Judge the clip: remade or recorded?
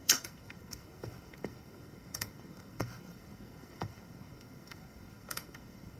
remade